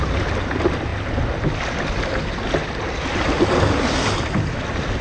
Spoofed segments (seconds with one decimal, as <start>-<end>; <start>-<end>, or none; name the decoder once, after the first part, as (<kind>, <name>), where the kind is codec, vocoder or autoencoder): none